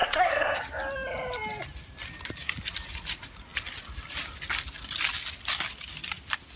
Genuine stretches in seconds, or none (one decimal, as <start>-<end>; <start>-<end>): 0.6-6.6